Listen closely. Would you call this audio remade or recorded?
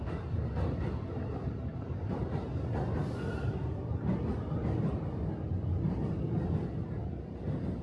recorded